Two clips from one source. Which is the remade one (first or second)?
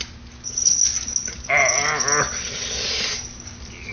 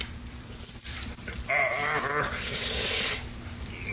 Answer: second